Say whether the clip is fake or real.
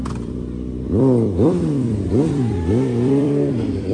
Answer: fake